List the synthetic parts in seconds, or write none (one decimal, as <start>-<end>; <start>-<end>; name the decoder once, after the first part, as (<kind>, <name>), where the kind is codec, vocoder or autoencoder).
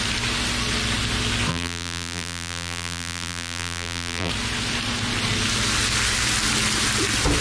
1.5-4.3 (vocoder, BigVGAN v2)